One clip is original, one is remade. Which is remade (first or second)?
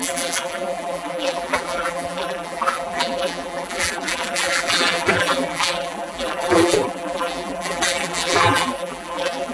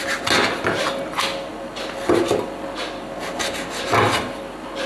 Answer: first